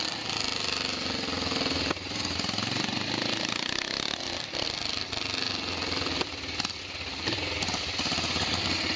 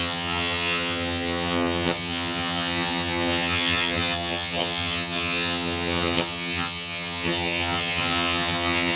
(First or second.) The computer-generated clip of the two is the second